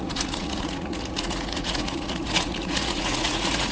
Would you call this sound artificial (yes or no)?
yes